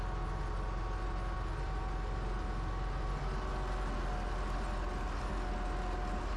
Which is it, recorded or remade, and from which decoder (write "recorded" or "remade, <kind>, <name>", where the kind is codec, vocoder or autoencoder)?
recorded